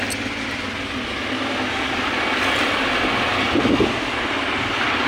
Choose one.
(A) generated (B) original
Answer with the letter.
B